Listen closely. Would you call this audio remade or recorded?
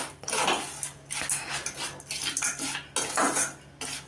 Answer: recorded